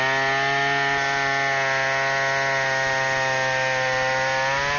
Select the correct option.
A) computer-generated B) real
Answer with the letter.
B